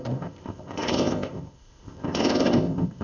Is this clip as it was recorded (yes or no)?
no